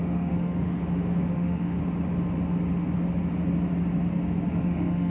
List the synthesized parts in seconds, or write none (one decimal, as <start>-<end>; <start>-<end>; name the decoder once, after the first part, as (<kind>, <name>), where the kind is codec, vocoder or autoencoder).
0.0-0.8 (autoencoder, DAC-VAE); 1.3-1.8; 4.5-5.1